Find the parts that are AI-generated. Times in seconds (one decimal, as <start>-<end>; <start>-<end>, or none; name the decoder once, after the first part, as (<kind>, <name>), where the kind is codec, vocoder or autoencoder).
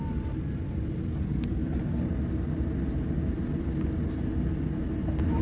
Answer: none